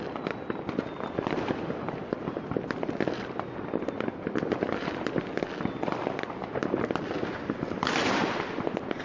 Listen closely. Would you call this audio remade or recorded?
recorded